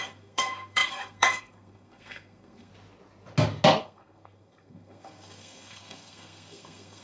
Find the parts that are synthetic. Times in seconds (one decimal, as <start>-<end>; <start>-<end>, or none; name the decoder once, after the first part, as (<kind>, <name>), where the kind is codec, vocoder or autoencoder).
0.0-2.7 (codec, SNAC); 3.8-7.0

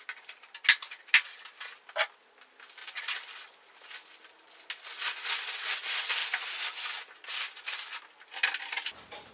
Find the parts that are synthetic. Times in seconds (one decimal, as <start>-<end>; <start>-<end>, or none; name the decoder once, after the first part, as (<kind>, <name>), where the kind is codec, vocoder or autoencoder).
none

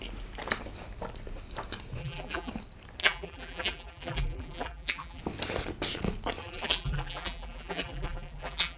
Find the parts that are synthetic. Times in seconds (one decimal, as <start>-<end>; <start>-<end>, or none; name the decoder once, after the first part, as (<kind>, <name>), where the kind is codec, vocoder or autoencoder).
2.0-2.5 (vocoder, BigVGAN v2); 3.0-5.2; 6.4-8.8